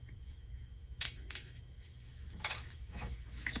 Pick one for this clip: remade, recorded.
remade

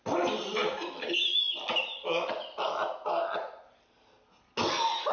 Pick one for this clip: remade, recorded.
recorded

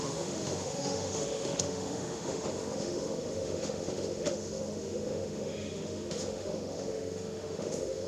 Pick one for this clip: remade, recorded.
remade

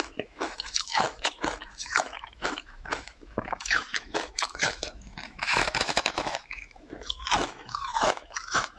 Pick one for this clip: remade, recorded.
remade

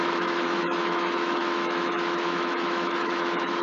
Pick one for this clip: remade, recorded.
remade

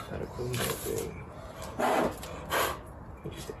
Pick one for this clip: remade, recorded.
recorded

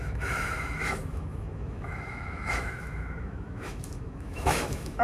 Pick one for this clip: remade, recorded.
remade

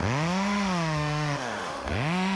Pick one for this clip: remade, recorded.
remade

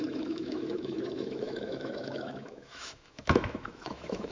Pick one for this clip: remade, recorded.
remade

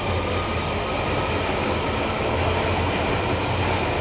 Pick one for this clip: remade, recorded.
recorded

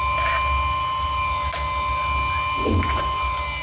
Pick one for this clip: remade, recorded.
recorded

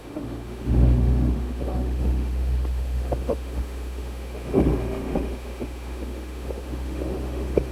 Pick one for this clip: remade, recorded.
remade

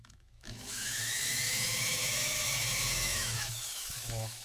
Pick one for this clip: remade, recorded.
remade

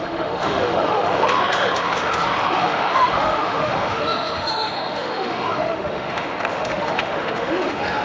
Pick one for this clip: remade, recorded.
remade